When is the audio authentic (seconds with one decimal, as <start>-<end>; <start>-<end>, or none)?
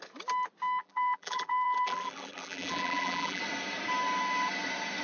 0.0-0.8; 3.4-5.0